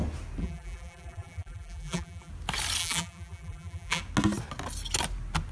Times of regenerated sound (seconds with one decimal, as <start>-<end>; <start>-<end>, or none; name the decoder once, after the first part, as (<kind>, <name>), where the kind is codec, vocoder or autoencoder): 0.4-2.3 (vocoder, BigVGAN v2); 2.8-4.0